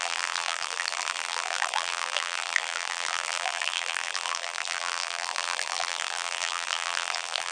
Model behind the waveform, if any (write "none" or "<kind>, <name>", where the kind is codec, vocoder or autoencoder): vocoder, BigVGAN v2